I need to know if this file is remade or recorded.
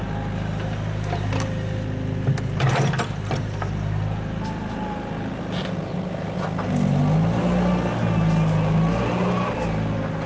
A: recorded